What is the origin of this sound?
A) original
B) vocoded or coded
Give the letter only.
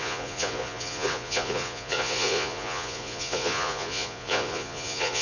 B